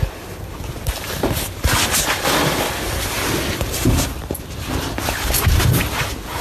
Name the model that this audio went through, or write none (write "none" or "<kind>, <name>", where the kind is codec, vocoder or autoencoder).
vocoder, BigVGAN v2